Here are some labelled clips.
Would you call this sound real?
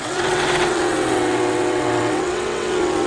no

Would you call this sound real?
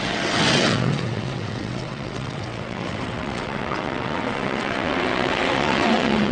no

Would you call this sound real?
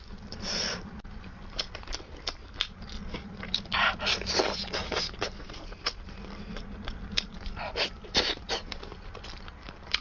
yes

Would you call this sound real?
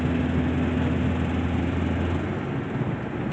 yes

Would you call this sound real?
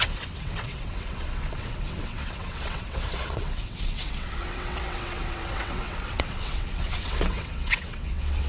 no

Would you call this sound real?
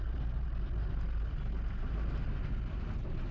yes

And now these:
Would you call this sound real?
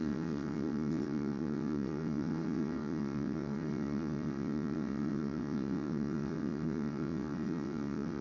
no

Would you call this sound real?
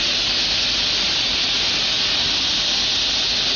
yes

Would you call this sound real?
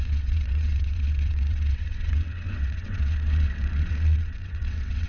no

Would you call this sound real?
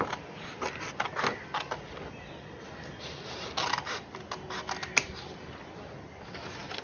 yes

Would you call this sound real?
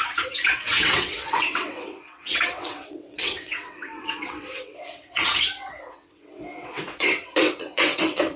no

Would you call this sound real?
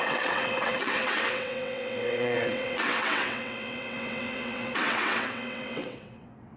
no